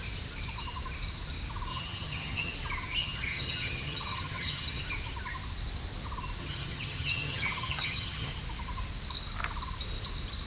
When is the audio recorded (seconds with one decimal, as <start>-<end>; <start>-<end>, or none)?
0.0-1.7; 2.5-3.0; 4.8-6.4; 8.3-10.5